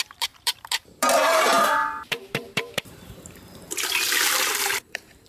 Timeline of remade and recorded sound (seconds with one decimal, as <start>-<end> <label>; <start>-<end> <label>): 0.0-5.3 remade